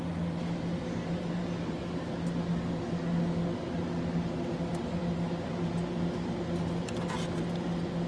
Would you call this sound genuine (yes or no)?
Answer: yes